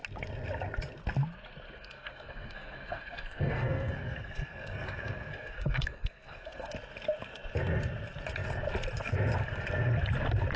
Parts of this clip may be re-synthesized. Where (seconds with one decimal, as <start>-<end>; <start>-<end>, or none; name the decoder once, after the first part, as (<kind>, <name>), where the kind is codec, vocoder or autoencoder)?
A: 1.8-6.7 (codec, SNAC)